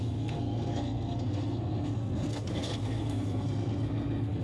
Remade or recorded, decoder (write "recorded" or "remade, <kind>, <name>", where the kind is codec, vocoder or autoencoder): remade, codec, SNAC